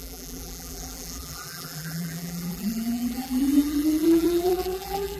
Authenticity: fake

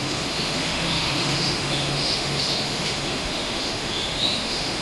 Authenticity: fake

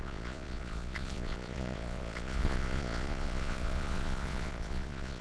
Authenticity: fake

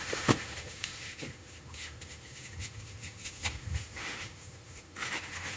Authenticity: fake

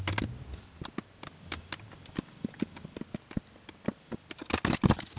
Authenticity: real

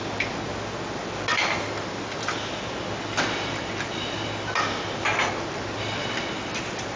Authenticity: real